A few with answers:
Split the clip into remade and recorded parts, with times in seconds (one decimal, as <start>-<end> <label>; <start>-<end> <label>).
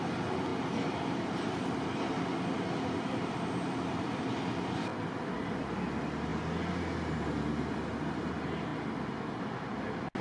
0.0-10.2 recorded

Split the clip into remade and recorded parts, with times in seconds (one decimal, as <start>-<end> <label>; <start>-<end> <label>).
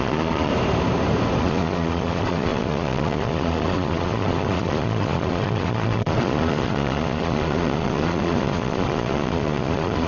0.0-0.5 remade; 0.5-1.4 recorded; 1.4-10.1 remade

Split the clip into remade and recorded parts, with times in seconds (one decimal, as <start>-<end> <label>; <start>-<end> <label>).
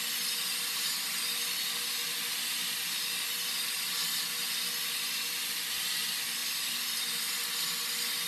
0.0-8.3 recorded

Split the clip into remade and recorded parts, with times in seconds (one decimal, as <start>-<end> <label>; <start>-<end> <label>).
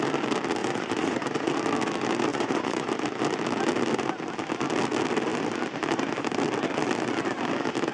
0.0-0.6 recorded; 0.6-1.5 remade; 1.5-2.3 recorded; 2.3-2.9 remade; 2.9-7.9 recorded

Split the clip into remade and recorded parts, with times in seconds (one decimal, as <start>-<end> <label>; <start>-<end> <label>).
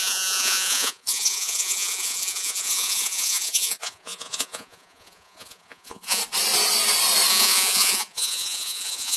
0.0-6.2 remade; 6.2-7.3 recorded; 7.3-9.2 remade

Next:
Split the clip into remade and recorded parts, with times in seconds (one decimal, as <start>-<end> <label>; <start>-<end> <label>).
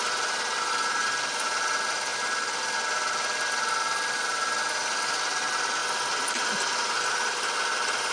0.0-8.1 recorded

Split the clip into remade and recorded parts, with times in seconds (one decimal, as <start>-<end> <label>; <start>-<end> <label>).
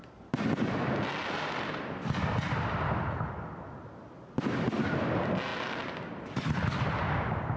0.0-7.6 recorded